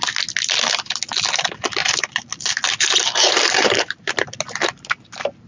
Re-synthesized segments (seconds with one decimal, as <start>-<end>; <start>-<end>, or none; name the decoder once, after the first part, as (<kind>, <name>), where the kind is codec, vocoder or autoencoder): 3.0-4.0 (vocoder, BigVGAN v2)